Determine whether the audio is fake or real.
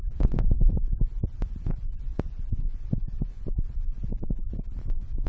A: fake